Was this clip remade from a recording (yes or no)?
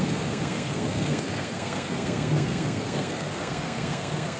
yes